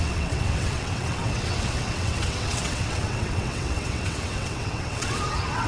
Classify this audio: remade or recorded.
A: remade